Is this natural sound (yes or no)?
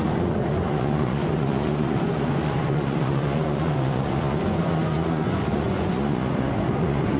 no